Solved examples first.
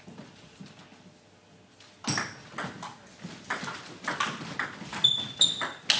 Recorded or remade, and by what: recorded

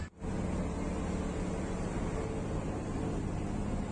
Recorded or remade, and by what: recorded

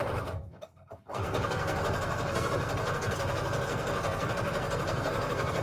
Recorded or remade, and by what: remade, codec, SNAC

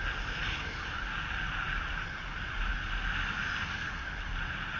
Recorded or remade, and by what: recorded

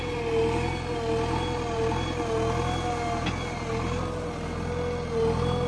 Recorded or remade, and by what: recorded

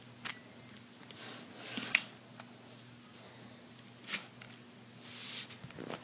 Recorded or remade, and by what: recorded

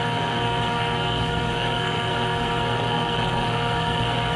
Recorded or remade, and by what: remade, codec, SNAC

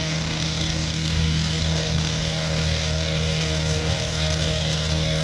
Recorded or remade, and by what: remade, codec, DAC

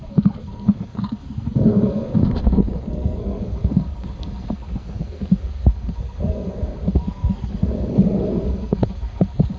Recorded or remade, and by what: remade, codec, SNAC